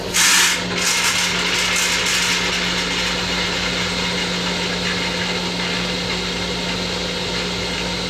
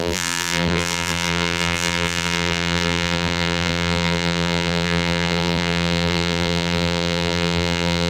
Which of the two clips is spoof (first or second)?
second